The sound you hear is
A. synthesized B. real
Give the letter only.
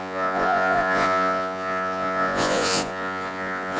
A